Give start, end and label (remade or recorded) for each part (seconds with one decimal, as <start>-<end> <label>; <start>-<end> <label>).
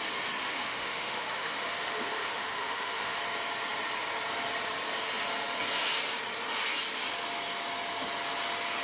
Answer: 0.0-0.4 recorded; 0.4-3.2 remade; 3.2-8.8 recorded